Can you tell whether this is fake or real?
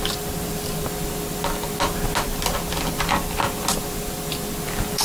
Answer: real